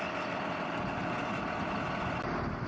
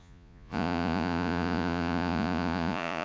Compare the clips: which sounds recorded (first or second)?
first